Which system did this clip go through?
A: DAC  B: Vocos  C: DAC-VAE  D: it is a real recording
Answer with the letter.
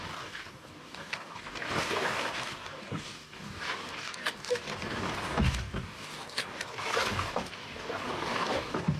A